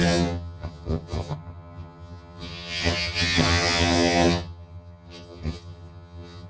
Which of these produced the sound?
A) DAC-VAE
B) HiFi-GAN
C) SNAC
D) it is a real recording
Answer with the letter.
B